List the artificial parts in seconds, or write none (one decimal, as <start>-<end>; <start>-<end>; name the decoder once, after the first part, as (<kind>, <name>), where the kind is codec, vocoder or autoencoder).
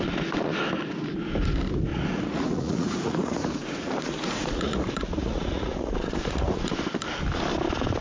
1.9-6.7 (vocoder, Vocos)